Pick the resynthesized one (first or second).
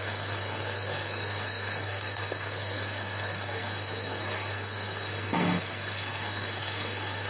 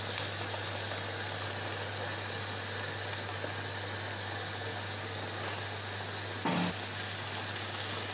first